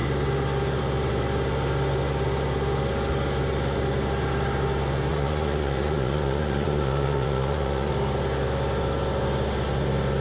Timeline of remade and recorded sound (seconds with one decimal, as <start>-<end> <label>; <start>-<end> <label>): 0.0-5.1 recorded; 5.1-7.9 remade; 7.9-10.2 recorded